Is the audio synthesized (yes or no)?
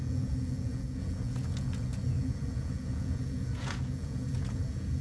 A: yes